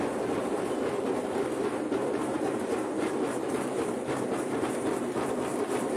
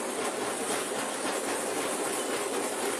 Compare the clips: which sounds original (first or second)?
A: second